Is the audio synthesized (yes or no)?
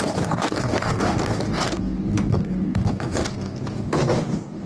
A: yes